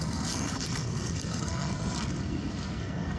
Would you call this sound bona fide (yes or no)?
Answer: no